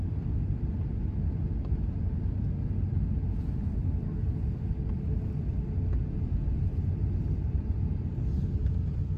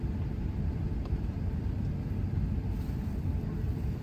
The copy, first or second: second